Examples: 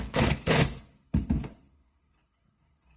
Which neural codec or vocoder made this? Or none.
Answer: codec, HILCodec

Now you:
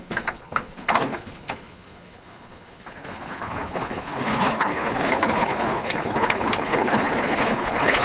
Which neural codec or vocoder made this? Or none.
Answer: codec, HILCodec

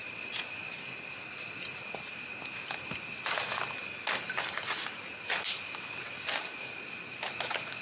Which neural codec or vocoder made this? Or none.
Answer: none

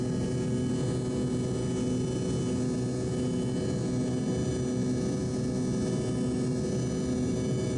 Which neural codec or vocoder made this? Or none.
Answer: none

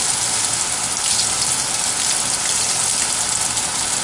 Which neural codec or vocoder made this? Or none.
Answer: none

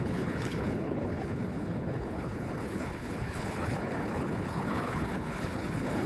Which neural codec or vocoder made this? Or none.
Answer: codec, HILCodec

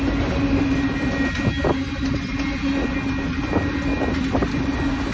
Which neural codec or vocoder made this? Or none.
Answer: none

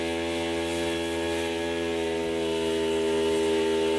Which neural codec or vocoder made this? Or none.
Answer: none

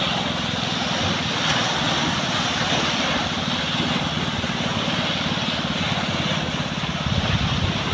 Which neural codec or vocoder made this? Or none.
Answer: none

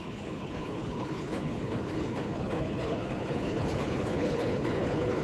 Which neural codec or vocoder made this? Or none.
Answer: codec, HILCodec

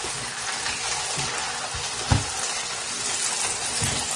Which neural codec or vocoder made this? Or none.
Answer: none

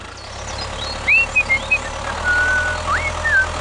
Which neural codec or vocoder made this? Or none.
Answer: none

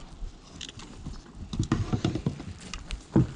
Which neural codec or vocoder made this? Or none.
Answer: none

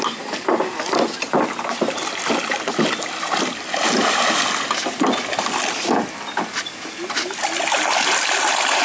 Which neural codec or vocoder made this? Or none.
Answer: none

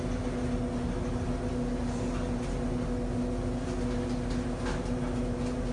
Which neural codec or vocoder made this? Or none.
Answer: none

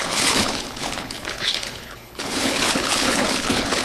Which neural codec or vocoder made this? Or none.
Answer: codec, HILCodec